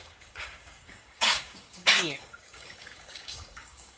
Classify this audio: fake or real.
fake